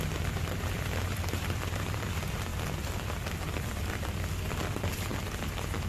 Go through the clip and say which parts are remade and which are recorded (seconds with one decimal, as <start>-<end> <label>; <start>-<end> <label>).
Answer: 0.0-5.1 remade; 5.1-5.9 recorded